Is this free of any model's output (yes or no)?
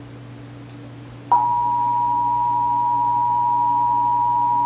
yes